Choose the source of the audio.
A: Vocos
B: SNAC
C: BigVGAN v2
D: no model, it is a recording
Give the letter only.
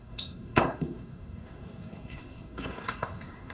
B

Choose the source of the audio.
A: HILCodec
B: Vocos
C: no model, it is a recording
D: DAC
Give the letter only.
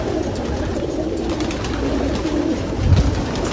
C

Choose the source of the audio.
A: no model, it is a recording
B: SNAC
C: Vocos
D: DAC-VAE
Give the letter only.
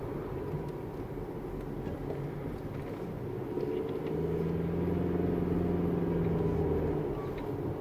A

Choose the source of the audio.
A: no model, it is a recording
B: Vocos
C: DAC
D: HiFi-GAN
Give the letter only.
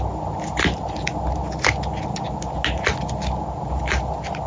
A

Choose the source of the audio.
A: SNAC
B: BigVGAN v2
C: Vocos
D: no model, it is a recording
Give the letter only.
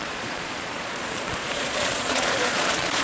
C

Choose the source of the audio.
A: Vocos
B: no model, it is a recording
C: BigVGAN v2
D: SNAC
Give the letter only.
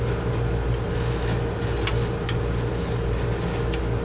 B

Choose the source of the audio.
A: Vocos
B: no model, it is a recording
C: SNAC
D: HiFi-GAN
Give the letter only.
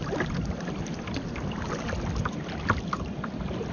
B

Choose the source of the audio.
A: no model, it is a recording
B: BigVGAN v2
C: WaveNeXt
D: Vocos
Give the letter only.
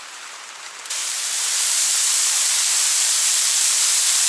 B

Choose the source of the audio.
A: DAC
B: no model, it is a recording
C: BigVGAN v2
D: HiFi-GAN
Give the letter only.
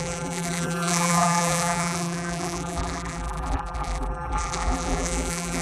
C